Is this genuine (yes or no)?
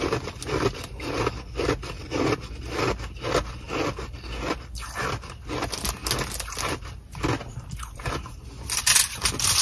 yes